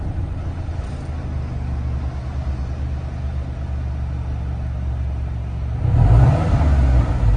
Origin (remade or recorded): recorded